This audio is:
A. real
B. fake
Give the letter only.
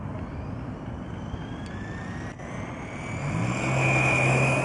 A